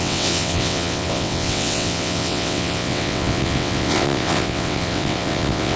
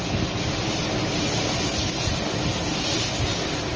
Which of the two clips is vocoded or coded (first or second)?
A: first